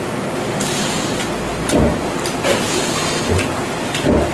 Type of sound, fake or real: real